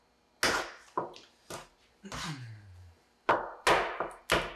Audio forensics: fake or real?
real